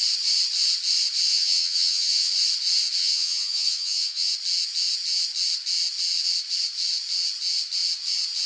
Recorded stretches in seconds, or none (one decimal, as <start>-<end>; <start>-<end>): 0.0-1.3; 2.3-3.0; 4.3-8.5